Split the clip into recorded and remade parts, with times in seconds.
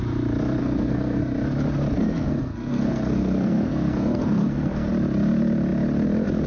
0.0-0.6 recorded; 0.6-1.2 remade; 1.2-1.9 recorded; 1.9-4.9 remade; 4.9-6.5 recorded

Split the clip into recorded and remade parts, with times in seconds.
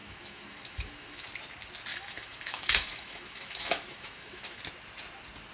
0.0-1.3 remade; 1.3-1.9 recorded; 1.9-4.6 remade; 4.6-5.5 recorded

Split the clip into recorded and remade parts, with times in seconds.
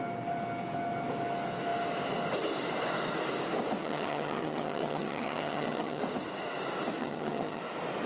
0.0-3.8 recorded; 3.8-6.0 remade; 6.0-7.0 recorded; 7.0-7.6 remade; 7.6-8.1 recorded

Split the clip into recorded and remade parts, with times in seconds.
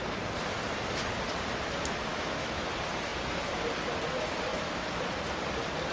0.0-2.1 recorded; 2.1-2.7 remade; 2.7-4.5 recorded; 4.5-5.0 remade; 5.0-5.9 recorded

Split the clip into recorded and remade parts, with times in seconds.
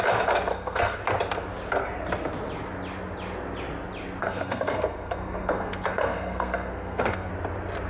0.0-0.5 recorded; 0.5-1.0 remade; 1.0-4.2 recorded; 4.2-7.3 remade; 7.3-7.9 recorded